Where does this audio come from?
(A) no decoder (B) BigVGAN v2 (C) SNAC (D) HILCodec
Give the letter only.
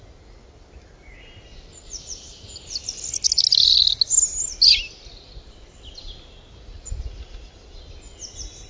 A